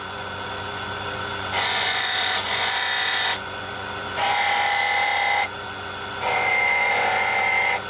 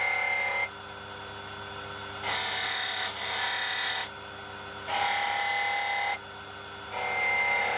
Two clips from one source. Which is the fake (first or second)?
first